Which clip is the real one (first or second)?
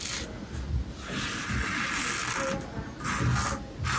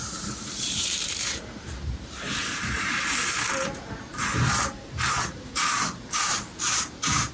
first